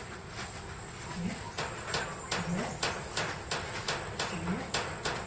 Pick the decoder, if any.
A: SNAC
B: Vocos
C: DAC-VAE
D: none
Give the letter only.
D